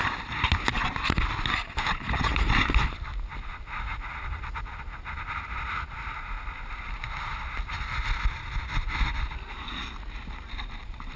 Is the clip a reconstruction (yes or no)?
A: no